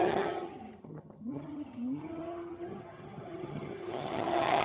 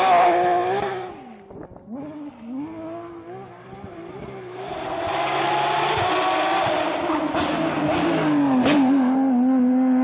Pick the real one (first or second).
second